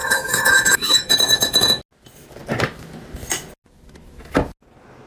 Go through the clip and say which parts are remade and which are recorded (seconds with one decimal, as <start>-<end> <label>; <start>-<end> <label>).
0.0-1.8 remade; 1.8-5.1 recorded